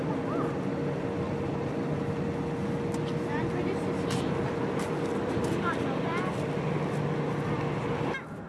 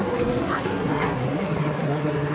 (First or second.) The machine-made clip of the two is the second